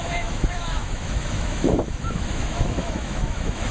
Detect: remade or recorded remade